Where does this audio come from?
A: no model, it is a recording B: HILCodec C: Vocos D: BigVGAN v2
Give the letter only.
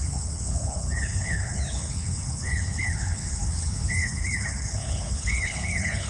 B